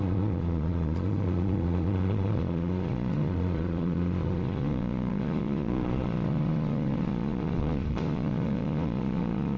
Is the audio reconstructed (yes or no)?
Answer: yes